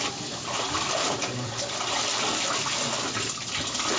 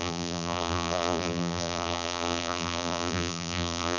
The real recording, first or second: first